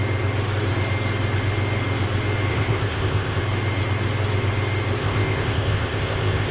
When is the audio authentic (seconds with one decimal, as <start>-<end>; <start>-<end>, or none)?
0.0-2.5; 3.4-5.0